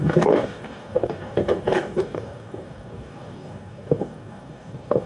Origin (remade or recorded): remade